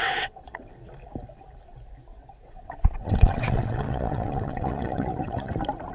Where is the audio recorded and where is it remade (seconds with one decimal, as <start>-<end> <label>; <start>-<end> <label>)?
0.0-0.7 remade; 0.7-2.1 recorded; 2.1-5.5 remade; 5.5-5.9 recorded